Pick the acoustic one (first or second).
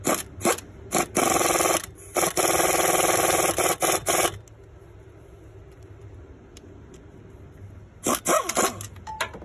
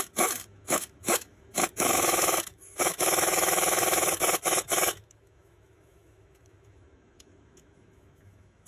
first